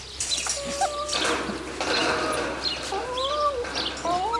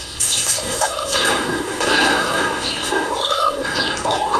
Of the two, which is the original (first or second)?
first